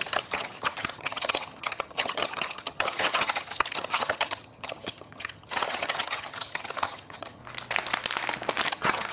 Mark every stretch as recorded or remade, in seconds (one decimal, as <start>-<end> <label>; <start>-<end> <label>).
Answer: 0.0-7.4 remade; 7.4-8.7 recorded; 8.7-9.1 remade